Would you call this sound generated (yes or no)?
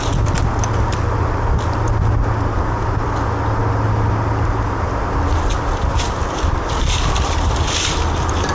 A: no